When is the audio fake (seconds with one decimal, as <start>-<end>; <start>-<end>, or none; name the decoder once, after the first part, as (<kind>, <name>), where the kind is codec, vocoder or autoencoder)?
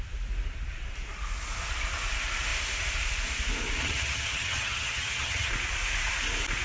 3.8-5.5 (vocoder, HiFi-GAN)